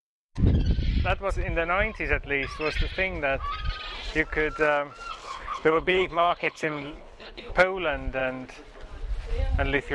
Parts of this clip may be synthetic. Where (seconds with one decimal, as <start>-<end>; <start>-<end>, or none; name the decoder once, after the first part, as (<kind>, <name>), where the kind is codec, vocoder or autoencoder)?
5.2-7.5 (codec, HILCodec)